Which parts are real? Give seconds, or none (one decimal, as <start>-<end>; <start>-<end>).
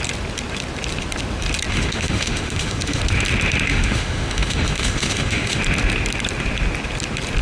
0.0-1.7; 3.0-3.7; 5.6-7.4